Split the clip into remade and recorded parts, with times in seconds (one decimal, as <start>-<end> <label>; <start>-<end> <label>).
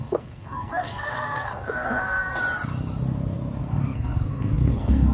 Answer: 0.0-2.3 remade; 2.3-3.6 recorded; 3.6-5.1 remade